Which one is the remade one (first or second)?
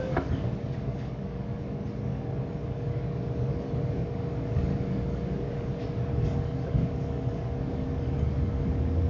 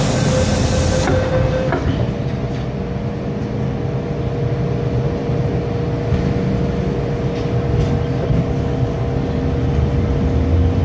first